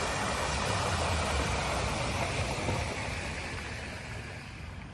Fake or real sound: real